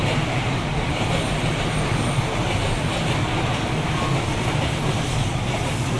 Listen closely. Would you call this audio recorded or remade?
recorded